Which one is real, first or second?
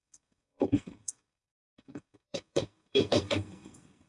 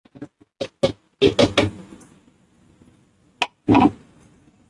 second